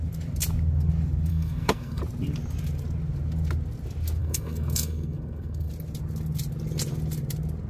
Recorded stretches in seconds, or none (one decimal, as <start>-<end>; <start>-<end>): 0.0-1.3; 2.0-4.2; 5.7-7.7